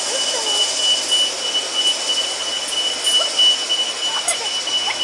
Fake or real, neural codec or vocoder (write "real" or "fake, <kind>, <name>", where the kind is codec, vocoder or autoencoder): real